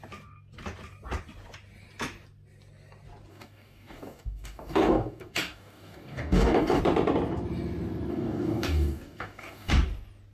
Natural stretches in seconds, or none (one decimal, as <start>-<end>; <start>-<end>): 0.0-3.3; 6.8-8.1; 9.7-10.3